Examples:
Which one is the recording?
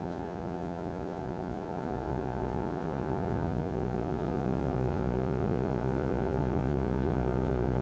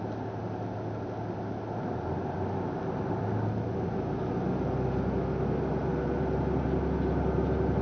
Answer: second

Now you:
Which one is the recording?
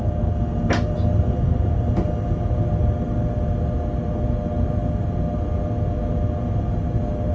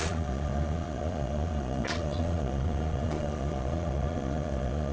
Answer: first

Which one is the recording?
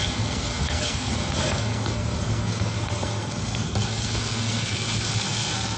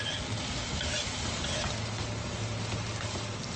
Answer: second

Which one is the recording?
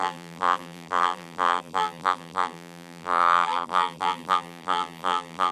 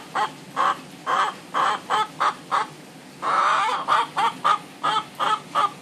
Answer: second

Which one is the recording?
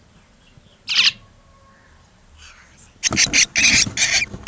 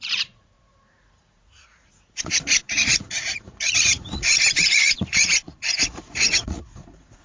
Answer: first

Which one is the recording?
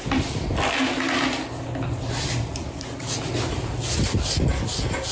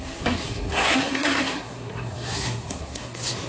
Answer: first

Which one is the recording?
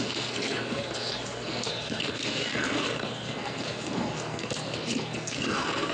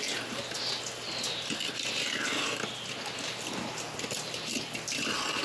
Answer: second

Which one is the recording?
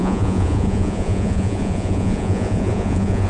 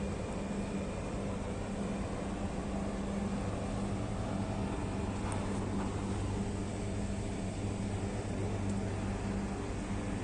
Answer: second